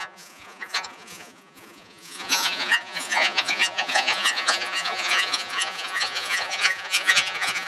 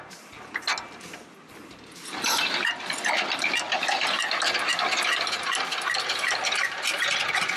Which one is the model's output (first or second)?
first